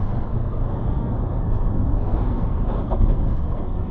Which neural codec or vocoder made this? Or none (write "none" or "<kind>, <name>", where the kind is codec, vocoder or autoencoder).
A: codec, SNAC